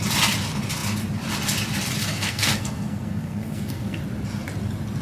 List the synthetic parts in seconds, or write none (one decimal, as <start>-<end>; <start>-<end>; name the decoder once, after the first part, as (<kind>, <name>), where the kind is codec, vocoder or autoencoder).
2.0-4.0 (codec, SNAC)